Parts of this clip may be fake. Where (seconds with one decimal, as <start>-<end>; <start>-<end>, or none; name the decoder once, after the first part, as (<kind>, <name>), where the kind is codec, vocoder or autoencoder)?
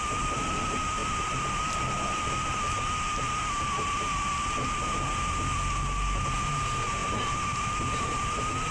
none